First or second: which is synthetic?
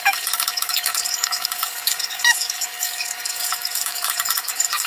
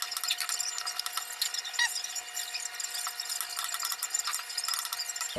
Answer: first